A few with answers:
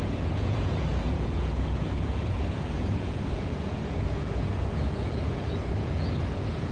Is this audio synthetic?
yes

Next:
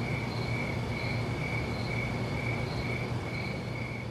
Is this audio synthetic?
no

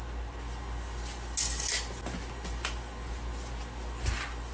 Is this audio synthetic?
no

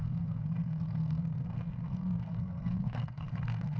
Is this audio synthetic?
yes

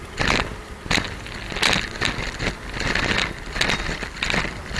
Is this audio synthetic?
no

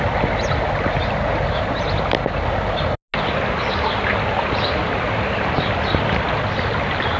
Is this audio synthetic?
no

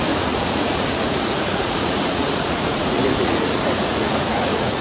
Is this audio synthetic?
yes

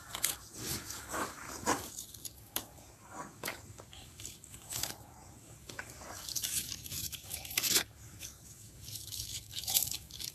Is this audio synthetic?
yes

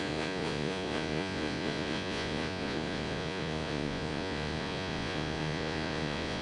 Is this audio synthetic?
yes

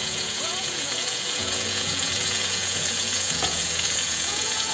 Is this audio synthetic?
yes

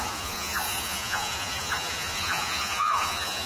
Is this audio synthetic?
yes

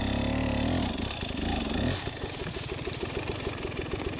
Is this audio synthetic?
no